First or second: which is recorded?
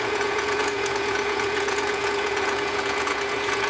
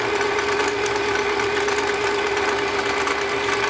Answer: second